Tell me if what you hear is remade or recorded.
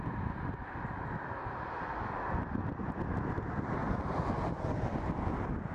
recorded